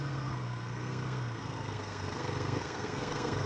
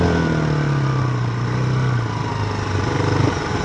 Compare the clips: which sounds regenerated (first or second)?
first